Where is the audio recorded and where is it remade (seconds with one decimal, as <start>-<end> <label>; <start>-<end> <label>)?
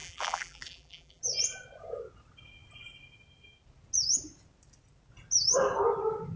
0.0-1.2 remade; 1.2-6.4 recorded